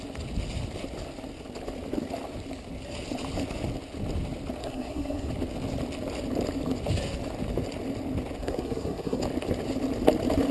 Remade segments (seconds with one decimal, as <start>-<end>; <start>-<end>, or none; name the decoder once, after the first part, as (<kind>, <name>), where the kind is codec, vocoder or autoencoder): 4.6-5.3 (codec, SNAC); 8.4-9.2